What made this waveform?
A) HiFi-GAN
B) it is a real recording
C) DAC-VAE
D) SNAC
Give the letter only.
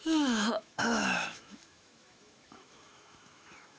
C